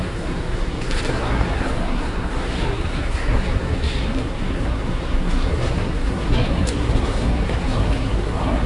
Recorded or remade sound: remade